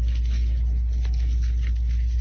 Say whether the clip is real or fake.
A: real